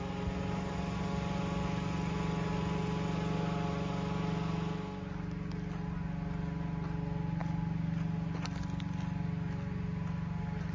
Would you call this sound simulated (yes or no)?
no